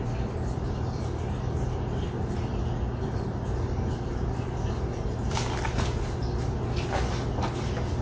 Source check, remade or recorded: recorded